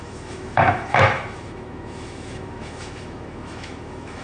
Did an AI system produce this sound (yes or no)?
yes